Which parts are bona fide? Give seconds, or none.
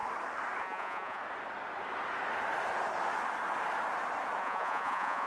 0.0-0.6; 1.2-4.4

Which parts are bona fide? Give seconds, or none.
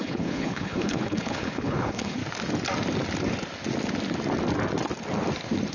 2.2-5.7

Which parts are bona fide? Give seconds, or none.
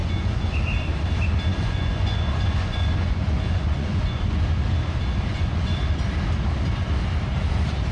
0.6-1.5; 4.4-5.3; 6.0-7.9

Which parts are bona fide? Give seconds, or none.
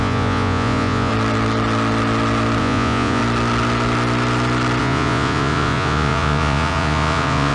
1.1-2.6; 3.2-4.8